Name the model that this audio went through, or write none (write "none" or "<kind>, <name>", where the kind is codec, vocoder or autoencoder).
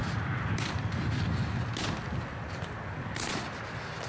none